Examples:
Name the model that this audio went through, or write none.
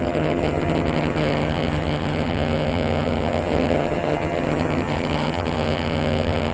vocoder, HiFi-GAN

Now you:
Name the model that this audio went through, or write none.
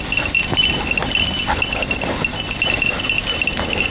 none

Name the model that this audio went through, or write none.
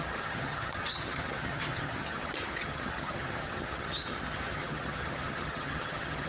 vocoder, HiFi-GAN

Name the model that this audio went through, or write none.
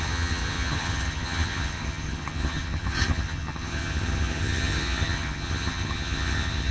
vocoder, HiFi-GAN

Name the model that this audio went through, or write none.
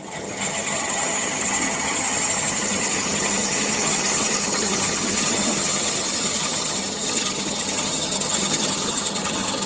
vocoder, HiFi-GAN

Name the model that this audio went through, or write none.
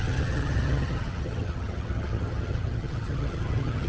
vocoder, HiFi-GAN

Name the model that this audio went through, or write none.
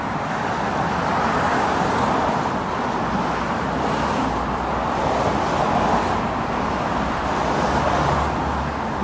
none